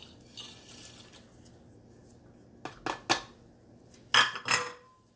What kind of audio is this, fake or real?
real